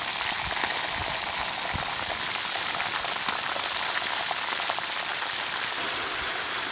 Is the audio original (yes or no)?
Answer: yes